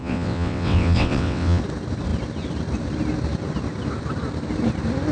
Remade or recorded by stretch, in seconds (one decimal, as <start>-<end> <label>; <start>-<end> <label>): 0.0-1.6 remade; 1.6-5.1 recorded